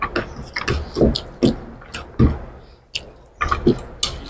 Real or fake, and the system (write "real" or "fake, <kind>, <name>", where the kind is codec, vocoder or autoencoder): real